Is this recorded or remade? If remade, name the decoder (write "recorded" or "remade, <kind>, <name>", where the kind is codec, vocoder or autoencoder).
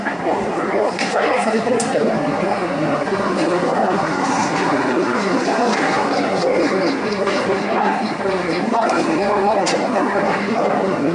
remade, codec, SNAC